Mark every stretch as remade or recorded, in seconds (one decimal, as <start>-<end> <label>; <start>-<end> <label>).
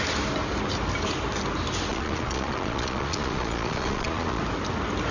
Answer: 0.0-1.9 recorded; 1.9-4.4 remade; 4.4-5.1 recorded